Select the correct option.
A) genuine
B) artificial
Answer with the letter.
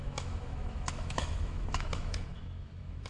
B